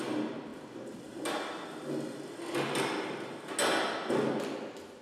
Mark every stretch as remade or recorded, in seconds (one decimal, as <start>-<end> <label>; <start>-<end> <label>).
0.0-5.0 recorded